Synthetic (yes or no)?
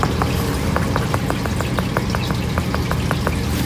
no